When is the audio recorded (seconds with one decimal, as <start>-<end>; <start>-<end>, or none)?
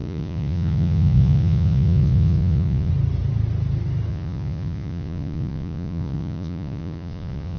2.9-4.1